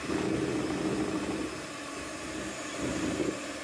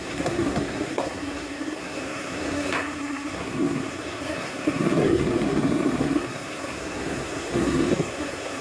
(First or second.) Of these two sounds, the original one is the first